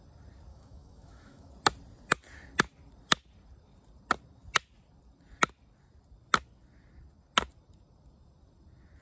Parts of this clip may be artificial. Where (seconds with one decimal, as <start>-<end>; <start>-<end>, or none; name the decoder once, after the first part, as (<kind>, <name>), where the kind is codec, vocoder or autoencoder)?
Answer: 0.5-1.5 (autoencoder, DAC-VAE)